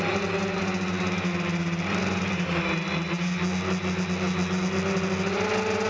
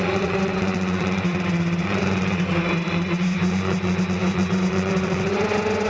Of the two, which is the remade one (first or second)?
second